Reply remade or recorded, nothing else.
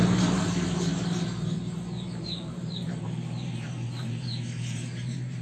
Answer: remade